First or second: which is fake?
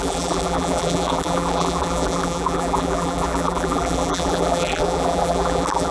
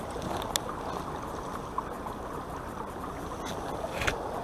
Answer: first